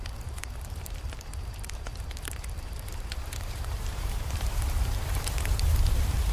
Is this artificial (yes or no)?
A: yes